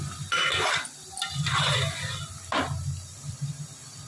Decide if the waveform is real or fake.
real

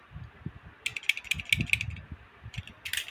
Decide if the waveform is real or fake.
real